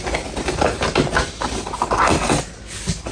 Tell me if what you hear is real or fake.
real